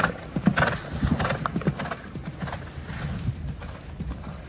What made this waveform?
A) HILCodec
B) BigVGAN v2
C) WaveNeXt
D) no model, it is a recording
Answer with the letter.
D